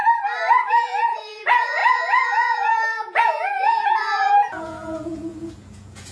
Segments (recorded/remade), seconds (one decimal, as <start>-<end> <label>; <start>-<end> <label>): 0.0-0.5 recorded; 0.5-6.1 remade